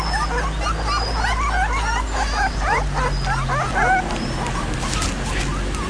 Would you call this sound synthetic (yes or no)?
no